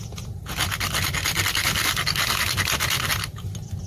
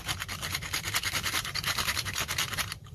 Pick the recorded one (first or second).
first